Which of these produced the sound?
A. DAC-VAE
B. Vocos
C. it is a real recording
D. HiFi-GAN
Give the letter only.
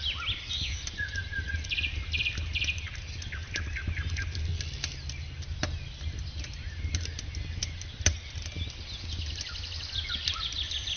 C